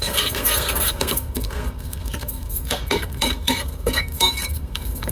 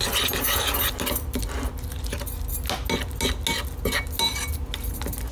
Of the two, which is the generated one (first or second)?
first